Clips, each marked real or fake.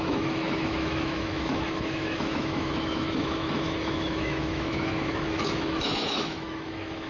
fake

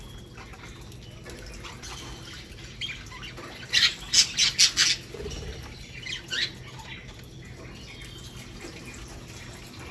real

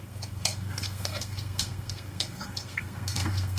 fake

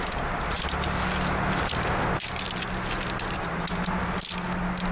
real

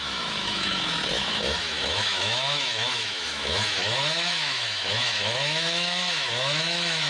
fake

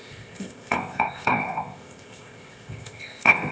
fake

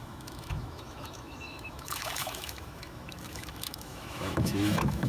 fake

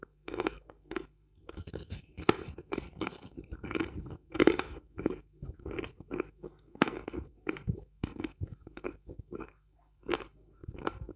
fake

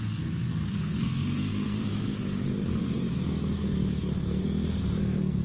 fake